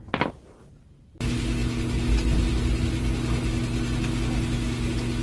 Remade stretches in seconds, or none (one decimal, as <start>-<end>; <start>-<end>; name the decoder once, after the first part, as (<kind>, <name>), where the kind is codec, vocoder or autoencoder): none